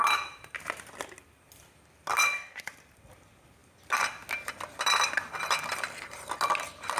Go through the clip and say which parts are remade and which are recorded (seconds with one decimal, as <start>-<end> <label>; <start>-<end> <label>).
0.0-7.0 recorded